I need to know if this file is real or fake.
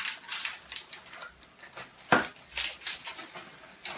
real